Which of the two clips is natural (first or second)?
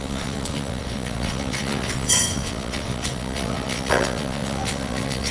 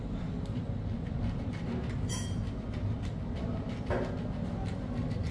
second